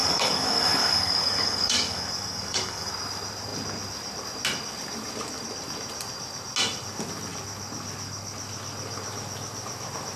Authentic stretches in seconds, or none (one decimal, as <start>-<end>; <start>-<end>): 2.9-10.2